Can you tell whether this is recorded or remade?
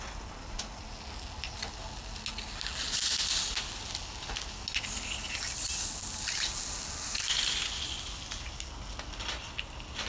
recorded